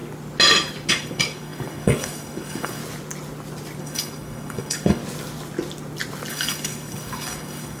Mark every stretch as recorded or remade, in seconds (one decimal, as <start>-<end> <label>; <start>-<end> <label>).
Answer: 0.0-0.9 recorded; 0.9-2.8 remade; 2.8-3.8 recorded; 3.8-5.0 remade; 5.0-6.3 recorded; 6.3-7.8 remade

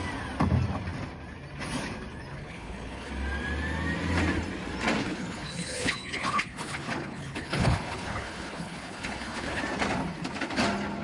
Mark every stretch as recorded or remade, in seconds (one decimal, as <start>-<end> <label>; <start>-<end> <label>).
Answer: 0.0-2.3 recorded; 2.3-3.1 remade; 3.1-5.0 recorded; 5.0-9.6 remade; 9.6-11.0 recorded

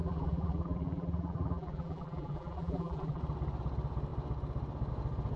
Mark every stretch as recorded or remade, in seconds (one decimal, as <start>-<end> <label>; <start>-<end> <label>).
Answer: 0.0-3.2 remade; 3.2-5.4 recorded

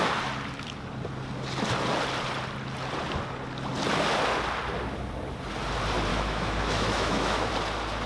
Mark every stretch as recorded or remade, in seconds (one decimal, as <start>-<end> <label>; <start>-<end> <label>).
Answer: 0.0-6.1 recorded; 6.1-7.5 remade; 7.5-8.1 recorded

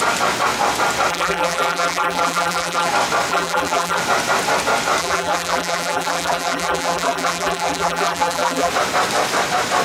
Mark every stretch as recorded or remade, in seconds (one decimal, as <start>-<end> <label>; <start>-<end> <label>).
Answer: 0.0-1.1 recorded; 1.1-2.9 remade; 2.9-3.3 recorded; 3.3-4.0 remade; 4.0-5.0 recorded; 5.0-8.7 remade; 8.7-9.8 recorded